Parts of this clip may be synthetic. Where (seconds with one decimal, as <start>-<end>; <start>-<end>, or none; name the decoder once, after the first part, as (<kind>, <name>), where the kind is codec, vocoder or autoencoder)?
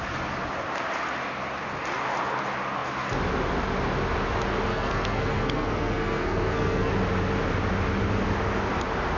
4.7-6.9 (codec, SNAC)